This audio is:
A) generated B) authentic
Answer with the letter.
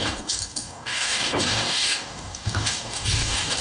A